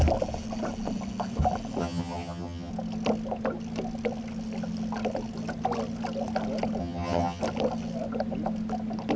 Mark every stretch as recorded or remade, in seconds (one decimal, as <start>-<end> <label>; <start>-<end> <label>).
0.0-1.8 recorded; 1.8-2.7 remade; 2.7-6.8 recorded; 6.8-7.4 remade; 7.4-9.2 recorded